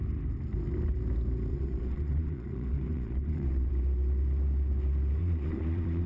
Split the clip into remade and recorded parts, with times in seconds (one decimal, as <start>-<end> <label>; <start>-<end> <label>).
0.0-1.5 recorded; 1.5-3.7 remade; 3.7-5.2 recorded; 5.2-6.1 remade